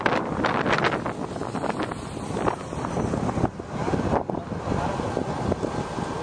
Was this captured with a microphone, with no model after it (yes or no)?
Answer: yes